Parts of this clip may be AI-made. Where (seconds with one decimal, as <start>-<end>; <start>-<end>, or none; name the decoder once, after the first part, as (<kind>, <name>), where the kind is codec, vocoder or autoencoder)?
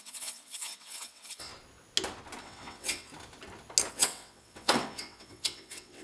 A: 0.0-1.5 (vocoder, WaveNeXt); 2.4-3.1; 3.9-6.0